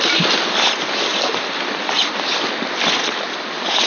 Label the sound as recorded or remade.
recorded